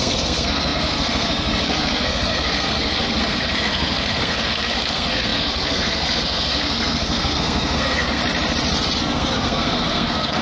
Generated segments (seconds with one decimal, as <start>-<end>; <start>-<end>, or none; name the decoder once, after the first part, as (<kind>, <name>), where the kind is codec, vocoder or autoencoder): 0.0-8.2 (codec, SNAC); 9.0-10.4